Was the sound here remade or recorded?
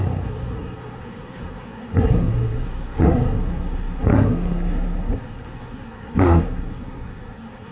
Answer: remade